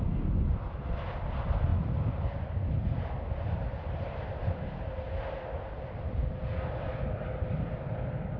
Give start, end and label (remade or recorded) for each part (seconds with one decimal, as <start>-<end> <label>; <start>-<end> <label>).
0.0-3.7 recorded; 3.7-4.7 remade; 4.7-8.4 recorded